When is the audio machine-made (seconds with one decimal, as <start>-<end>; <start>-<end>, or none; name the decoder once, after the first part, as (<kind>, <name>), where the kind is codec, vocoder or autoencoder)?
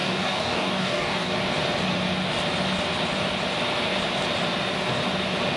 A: 0.0-1.3 (codec, DAC)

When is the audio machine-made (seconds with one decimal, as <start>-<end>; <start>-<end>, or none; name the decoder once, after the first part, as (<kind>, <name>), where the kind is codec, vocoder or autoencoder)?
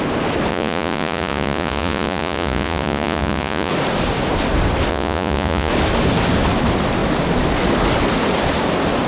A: 0.5-3.7 (vocoder, Vocos); 4.9-5.7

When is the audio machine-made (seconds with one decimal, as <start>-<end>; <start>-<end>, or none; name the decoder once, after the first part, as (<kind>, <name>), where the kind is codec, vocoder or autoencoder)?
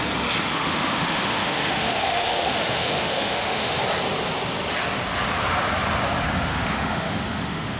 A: 0.5-3.8 (autoencoder, DAC-VAE); 6.5-7.8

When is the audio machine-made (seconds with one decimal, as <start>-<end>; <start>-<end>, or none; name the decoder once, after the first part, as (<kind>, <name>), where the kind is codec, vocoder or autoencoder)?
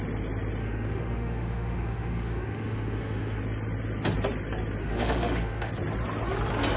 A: 0.6-3.4 (autoencoder, DAC-VAE); 4.8-5.7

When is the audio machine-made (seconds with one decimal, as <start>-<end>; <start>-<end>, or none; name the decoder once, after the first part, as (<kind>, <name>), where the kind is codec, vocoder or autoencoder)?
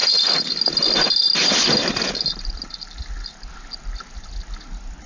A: 0.0-2.9 (vocoder, BigVGAN v2)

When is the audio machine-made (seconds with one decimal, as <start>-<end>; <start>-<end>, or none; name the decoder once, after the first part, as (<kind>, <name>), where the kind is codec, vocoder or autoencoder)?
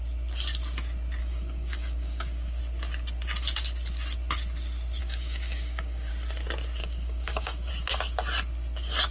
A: 1.2-2.6 (codec, DAC); 5.0-6.1; 6.8-7.7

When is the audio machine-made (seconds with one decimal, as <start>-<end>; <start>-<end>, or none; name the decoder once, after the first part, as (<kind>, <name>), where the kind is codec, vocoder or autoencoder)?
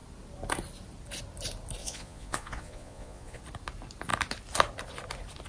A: 1.8-3.4 (vocoder, Vocos)